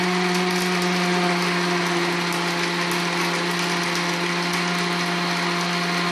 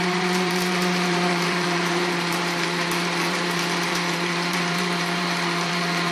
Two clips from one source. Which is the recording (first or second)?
first